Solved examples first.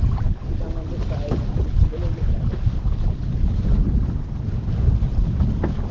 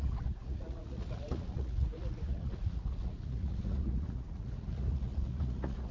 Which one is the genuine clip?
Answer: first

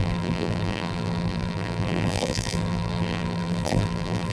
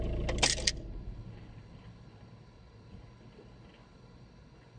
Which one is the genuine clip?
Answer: second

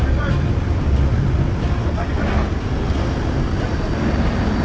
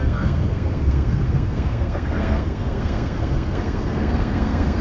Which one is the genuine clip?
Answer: first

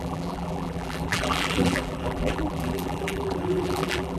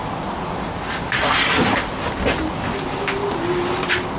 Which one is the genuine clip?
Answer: second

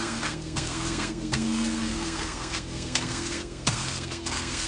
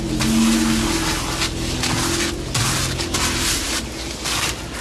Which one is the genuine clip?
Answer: second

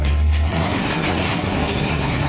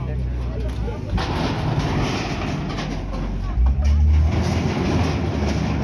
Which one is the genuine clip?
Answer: second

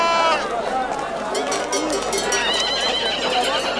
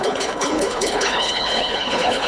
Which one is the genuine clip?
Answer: first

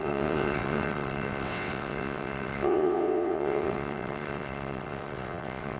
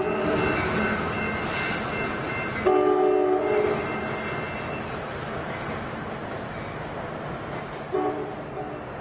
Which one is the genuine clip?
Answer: second